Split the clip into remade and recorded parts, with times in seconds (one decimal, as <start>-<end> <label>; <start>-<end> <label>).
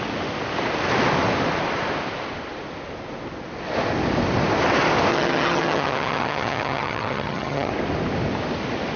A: 0.0-5.1 recorded; 5.1-7.7 remade; 7.7-9.0 recorded